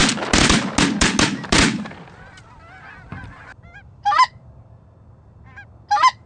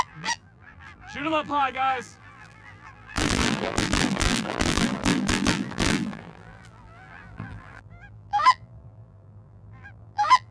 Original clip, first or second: first